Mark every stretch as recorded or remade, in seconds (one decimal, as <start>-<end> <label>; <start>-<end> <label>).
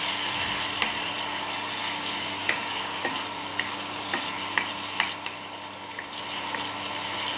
0.0-1.8 recorded; 1.8-3.0 remade; 3.0-3.5 recorded; 3.5-4.0 remade; 4.0-7.4 recorded